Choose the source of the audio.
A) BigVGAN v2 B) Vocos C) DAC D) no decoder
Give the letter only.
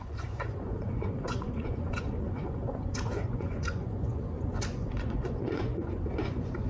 B